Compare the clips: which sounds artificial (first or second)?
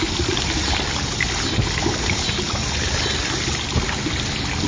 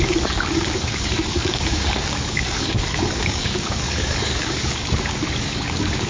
second